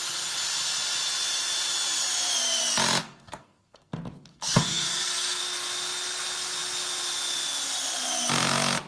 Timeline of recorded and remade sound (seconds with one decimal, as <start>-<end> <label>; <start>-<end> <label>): 0.0-3.0 recorded; 3.0-3.9 remade; 3.9-4.3 recorded; 4.3-5.4 remade; 5.4-8.9 recorded